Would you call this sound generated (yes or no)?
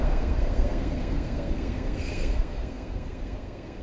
yes